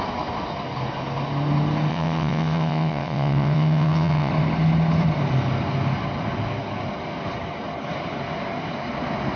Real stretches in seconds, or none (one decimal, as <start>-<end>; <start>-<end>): 0.0-1.9; 4.3-9.4